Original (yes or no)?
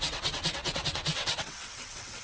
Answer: no